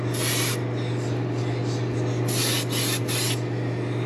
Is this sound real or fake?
real